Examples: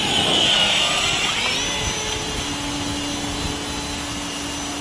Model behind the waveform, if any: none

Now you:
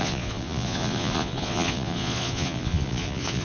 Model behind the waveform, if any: vocoder, Vocos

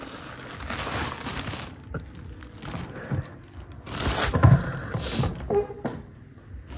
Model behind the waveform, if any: none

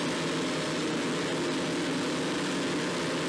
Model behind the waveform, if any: none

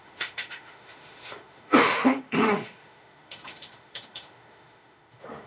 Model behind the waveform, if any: autoencoder, DAC-VAE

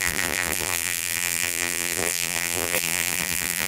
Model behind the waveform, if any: vocoder, BigVGAN v2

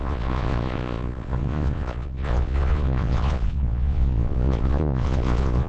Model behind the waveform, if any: vocoder, Vocos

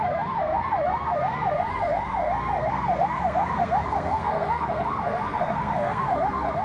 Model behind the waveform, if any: codec, SNAC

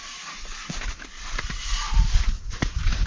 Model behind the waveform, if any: vocoder, BigVGAN v2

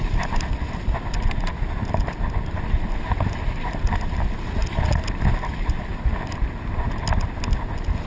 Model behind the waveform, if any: none